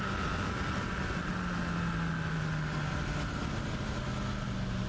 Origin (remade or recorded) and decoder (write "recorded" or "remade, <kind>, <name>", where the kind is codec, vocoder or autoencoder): recorded